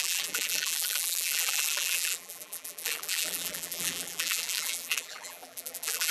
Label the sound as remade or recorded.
remade